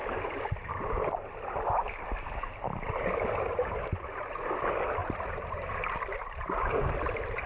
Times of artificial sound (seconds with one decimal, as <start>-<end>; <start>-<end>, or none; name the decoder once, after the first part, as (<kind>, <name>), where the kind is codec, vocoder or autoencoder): 5.0-5.5 (vocoder, BigVGAN v2)